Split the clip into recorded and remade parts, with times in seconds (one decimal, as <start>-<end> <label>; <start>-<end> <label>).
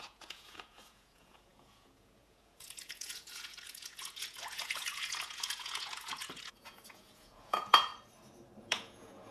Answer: 0.0-7.9 remade; 7.9-8.6 recorded; 8.6-9.3 remade